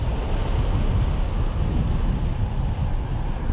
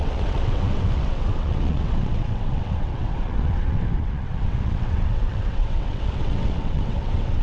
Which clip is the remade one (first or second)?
second